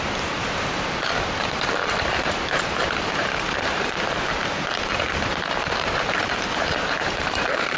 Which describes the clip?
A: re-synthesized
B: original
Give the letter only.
A